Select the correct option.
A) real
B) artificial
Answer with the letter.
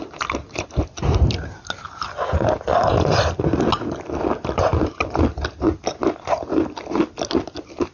A